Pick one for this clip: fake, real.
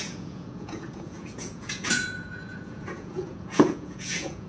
fake